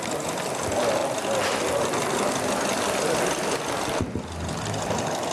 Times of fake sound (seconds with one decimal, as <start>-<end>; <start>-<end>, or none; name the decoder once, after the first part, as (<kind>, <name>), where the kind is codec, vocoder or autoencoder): none